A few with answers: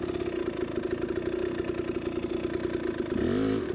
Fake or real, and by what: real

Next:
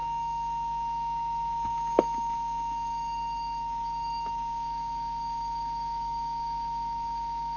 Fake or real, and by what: fake, autoencoder, DAC-VAE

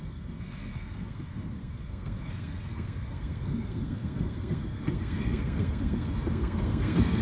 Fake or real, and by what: fake, codec, SNAC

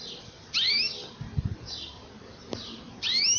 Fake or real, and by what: real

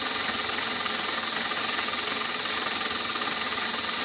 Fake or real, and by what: real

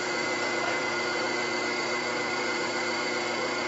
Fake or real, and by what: fake, vocoder, BigVGAN v2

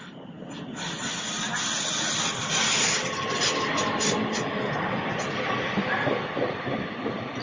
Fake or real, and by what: real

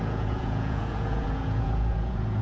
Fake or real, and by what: fake, vocoder, Vocos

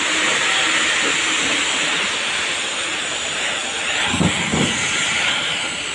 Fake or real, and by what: real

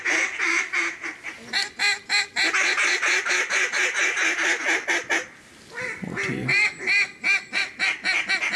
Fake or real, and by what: real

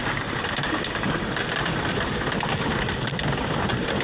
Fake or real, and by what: fake, vocoder, BigVGAN v2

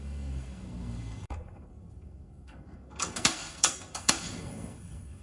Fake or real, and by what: fake, codec, SNAC